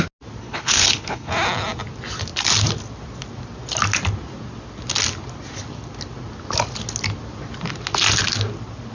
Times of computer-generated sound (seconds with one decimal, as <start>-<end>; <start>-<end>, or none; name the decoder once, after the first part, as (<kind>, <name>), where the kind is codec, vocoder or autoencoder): 0.4-1.3 (codec, HILCodec)